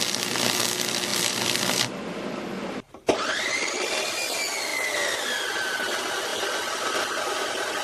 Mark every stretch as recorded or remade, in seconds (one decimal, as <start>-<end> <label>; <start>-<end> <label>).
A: 0.0-1.1 recorded; 1.1-3.9 remade; 3.9-4.7 recorded; 4.7-5.2 remade; 5.2-6.3 recorded; 6.3-7.0 remade; 7.0-7.8 recorded